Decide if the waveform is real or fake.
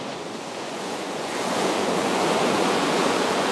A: fake